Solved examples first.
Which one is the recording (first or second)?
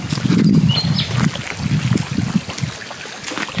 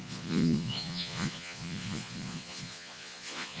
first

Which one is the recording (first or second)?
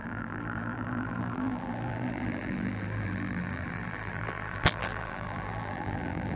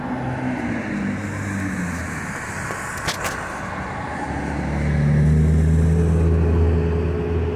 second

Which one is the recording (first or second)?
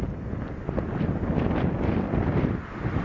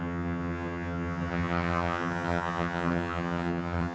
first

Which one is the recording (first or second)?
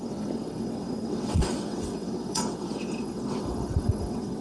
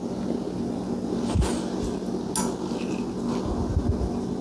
second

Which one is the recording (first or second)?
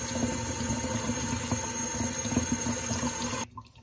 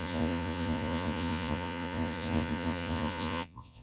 first